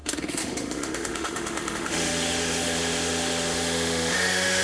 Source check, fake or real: fake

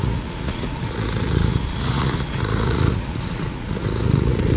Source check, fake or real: fake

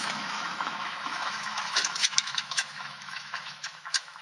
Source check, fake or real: fake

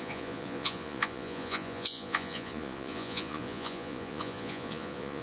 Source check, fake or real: fake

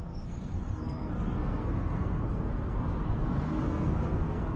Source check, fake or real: fake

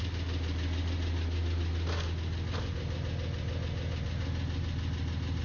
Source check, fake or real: real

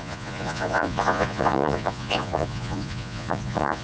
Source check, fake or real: fake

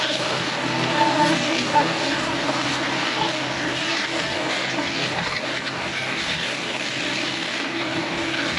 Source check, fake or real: fake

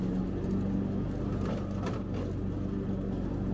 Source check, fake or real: real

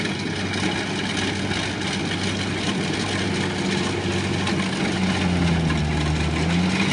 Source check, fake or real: real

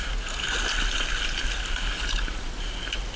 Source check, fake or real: real